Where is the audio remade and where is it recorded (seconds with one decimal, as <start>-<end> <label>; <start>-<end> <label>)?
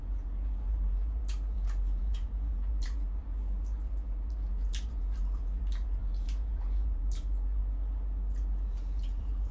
0.0-7.6 remade; 7.6-8.7 recorded; 8.7-9.5 remade